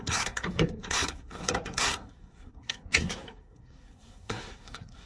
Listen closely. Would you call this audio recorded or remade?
remade